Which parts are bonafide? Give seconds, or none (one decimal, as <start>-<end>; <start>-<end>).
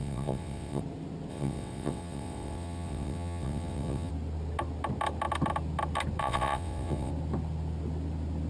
0.8-1.3; 4.1-6.2; 7.1-8.5